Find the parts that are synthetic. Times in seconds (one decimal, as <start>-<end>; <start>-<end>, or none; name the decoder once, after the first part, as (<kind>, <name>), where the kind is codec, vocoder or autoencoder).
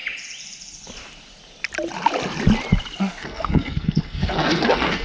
3.0-5.0 (codec, SNAC)